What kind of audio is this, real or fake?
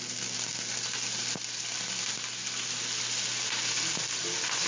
real